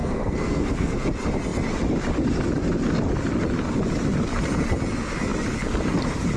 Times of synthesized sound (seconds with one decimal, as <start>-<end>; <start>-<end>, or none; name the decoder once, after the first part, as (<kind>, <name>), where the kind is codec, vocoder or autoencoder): 0.0-1.1 (codec, SNAC)